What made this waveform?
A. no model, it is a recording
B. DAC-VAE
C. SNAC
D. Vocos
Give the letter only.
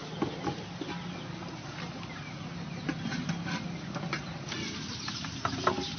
A